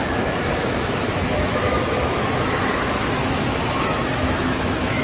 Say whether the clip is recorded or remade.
remade